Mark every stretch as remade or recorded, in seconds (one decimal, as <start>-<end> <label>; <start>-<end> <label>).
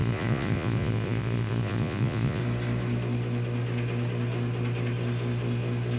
0.0-2.4 remade; 2.4-6.0 recorded